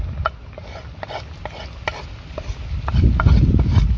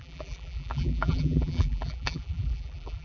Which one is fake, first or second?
second